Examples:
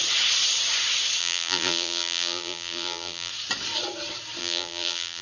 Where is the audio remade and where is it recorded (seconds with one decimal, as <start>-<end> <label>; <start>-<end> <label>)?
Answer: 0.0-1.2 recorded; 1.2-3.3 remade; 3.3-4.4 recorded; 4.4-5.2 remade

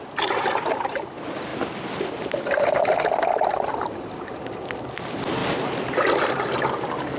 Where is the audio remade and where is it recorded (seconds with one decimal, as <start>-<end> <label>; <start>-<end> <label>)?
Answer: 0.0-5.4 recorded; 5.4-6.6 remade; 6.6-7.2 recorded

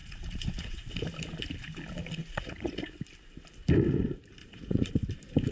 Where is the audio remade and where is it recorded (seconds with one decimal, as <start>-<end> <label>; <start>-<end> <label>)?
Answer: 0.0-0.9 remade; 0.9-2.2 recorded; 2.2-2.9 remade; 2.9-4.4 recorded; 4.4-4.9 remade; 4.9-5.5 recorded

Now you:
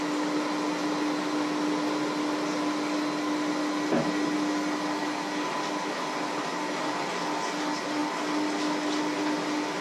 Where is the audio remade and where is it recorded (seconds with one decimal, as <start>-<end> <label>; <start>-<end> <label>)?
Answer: 0.0-9.8 recorded

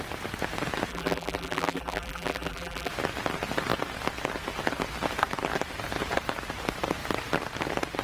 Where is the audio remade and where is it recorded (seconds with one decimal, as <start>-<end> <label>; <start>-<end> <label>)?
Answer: 0.0-0.9 recorded; 0.9-2.9 remade; 2.9-8.0 recorded

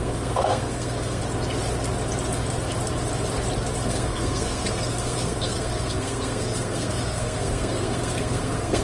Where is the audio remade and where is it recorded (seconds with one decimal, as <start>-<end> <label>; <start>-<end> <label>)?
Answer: 0.0-1.2 remade; 1.2-3.9 recorded; 3.9-8.8 remade

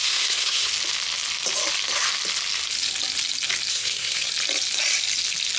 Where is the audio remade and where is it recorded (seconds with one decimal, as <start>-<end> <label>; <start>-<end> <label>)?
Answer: 0.0-0.7 remade; 0.7-3.7 recorded; 3.7-4.3 remade; 4.3-5.6 recorded